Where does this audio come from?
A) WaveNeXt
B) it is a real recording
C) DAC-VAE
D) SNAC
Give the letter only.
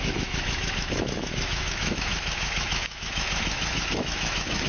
C